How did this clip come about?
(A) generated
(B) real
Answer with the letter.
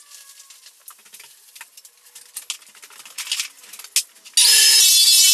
B